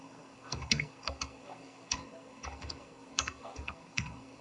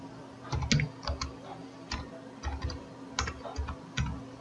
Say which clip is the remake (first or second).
first